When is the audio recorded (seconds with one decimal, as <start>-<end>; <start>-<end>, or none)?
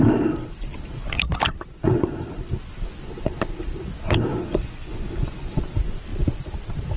0.0-1.8; 2.4-4.3; 5.6-7.0